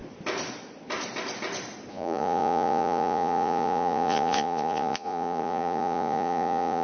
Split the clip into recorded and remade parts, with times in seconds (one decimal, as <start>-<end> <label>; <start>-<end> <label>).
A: 0.0-1.9 recorded; 1.9-6.8 remade